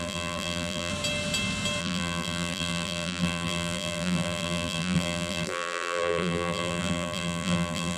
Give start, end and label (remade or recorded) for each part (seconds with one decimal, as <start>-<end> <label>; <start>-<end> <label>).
0.0-0.9 remade; 0.9-1.8 recorded; 1.8-8.0 remade